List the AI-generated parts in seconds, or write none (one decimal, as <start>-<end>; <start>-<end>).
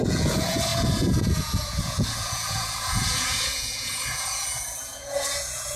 0.0-5.8